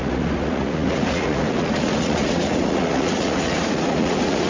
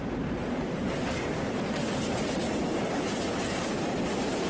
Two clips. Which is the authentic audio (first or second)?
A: second